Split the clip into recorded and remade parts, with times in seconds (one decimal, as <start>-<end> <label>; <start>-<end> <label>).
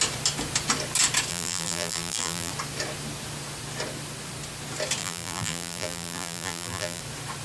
0.0-1.3 recorded; 1.3-2.5 remade; 2.5-5.0 recorded; 5.0-7.0 remade; 7.0-7.4 recorded